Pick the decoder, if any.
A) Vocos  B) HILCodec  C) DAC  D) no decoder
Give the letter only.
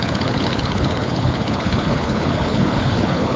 B